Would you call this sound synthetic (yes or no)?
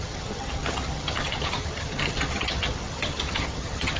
yes